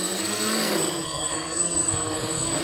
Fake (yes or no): yes